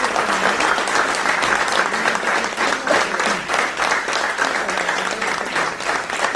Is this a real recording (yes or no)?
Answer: yes